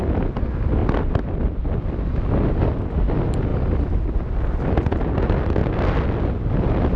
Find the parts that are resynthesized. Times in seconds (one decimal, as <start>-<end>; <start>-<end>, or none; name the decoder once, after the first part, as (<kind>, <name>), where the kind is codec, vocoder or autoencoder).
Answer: none